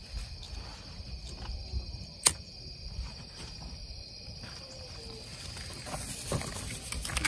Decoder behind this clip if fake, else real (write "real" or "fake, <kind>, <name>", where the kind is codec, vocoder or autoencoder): real